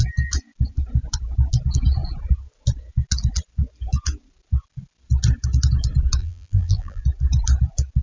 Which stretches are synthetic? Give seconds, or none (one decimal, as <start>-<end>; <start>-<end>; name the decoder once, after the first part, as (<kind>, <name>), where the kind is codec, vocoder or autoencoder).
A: 6.2-7.0 (vocoder, BigVGAN v2)

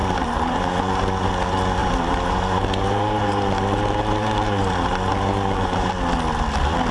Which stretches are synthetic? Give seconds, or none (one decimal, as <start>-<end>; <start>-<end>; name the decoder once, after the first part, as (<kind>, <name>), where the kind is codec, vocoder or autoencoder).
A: 0.0-1.1 (vocoder, BigVGAN v2); 1.8-5.9

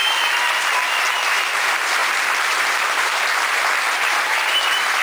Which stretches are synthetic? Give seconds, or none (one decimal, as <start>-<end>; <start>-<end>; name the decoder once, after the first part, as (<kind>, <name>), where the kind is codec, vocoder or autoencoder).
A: 0.0-1.0 (vocoder, BigVGAN v2); 2.0-4.6

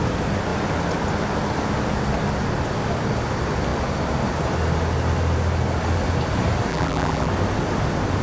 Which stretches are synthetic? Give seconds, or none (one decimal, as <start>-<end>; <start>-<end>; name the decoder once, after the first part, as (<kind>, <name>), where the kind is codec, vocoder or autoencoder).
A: 6.7-7.3 (vocoder, BigVGAN v2)

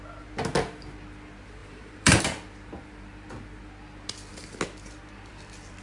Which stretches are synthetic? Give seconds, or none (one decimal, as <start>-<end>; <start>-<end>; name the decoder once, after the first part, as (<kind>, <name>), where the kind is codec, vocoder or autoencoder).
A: 1.6-2.2 (vocoder, BigVGAN v2)

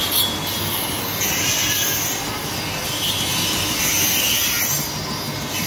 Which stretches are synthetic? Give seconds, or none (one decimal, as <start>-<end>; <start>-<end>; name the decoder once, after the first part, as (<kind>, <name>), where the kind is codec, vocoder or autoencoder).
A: none

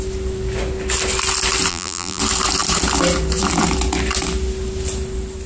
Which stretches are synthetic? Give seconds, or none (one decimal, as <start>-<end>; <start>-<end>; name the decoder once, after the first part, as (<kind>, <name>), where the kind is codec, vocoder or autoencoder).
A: 1.7-2.2 (vocoder, BigVGAN v2)